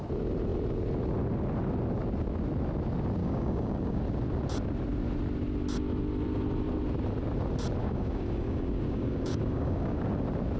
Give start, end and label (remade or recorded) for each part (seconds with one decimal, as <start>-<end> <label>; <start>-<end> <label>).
0.0-3.2 recorded; 3.2-4.0 remade; 4.0-7.8 recorded; 7.8-10.0 remade; 10.0-10.6 recorded